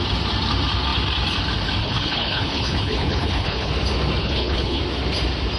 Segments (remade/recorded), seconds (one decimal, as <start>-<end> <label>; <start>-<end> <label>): 0.0-1.8 recorded; 1.8-3.7 remade; 3.7-4.2 recorded; 4.2-4.8 remade; 4.8-5.6 recorded